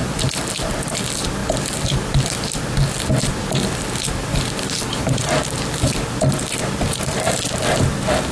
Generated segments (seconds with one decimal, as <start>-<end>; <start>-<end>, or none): 0.0-0.5